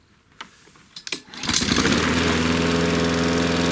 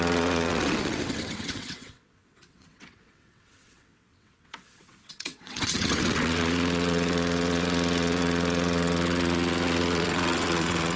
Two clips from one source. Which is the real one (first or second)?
first